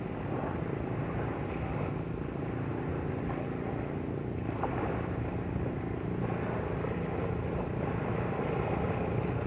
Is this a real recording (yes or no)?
yes